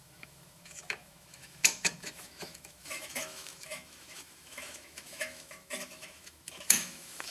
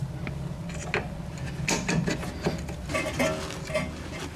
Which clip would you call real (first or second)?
second